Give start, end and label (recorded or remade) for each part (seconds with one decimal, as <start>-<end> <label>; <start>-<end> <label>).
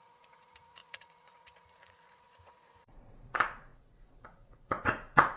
0.0-5.4 remade